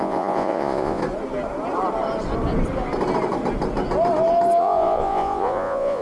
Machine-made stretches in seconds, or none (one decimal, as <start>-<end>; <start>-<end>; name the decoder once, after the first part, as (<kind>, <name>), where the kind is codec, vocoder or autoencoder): 0.0-1.0 (vocoder, Vocos); 4.6-6.0